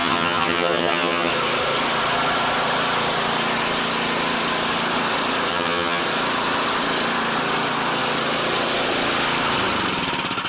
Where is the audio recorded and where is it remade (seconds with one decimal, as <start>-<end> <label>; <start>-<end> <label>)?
0.0-1.3 remade; 1.3-5.5 recorded; 5.5-6.0 remade; 6.0-10.5 recorded